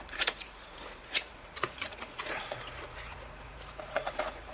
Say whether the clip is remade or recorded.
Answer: remade